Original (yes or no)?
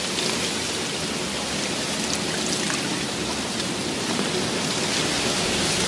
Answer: yes